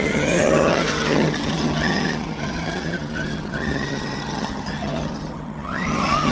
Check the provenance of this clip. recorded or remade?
remade